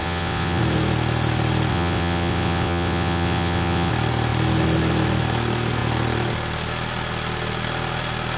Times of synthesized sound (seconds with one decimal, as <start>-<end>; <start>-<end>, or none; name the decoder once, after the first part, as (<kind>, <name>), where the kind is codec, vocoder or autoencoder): 0.0-0.6 (vocoder, WaveNeXt); 1.7-3.9